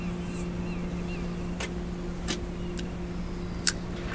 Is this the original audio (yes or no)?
yes